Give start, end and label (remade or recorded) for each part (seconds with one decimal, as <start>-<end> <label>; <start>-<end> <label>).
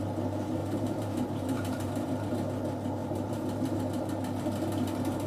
0.0-0.6 recorded; 0.6-2.3 remade; 2.3-3.0 recorded; 3.0-3.8 remade; 3.8-5.3 recorded